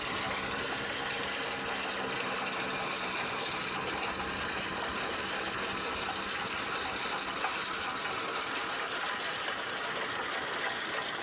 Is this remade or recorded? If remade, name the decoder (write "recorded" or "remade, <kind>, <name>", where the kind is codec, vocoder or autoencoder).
recorded